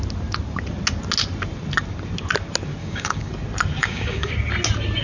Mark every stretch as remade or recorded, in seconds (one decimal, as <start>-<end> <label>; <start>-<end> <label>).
0.0-2.8 recorded; 2.8-3.3 remade; 3.3-3.8 recorded; 3.8-4.3 remade; 4.3-5.0 recorded